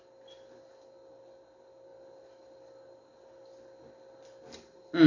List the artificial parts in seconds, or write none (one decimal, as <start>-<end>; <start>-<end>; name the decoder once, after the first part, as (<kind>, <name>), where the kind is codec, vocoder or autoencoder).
none